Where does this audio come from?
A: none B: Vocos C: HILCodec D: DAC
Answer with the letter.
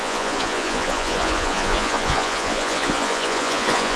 B